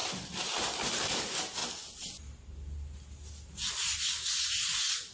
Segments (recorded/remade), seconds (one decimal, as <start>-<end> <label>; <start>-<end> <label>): 0.0-5.1 recorded